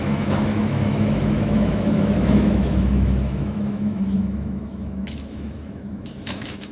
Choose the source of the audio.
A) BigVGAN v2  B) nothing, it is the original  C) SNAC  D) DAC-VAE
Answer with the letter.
D